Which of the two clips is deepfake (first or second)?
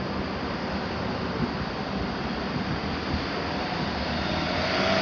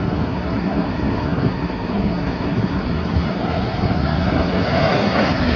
second